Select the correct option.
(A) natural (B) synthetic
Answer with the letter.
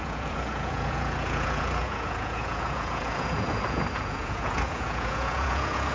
B